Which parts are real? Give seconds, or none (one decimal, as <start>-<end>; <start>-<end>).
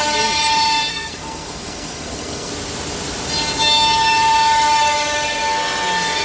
0.0-0.9; 2.5-6.2